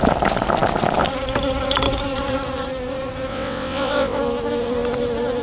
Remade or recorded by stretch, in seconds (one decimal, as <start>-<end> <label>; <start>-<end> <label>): 0.0-3.3 recorded; 3.3-4.2 remade; 4.2-5.4 recorded